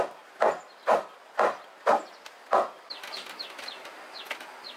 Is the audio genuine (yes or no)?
yes